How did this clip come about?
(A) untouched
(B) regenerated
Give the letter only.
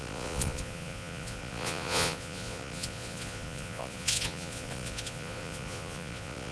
B